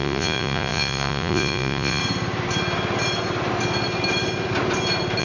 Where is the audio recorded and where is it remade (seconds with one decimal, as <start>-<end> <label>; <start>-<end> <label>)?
0.0-2.0 remade; 2.0-5.2 recorded